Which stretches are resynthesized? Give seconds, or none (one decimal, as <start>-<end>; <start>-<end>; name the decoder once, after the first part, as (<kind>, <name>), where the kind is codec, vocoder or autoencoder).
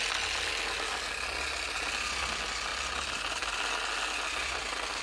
none